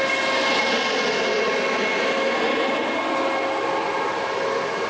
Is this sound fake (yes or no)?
no